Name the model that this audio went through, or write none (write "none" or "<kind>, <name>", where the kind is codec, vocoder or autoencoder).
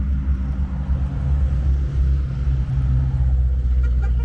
none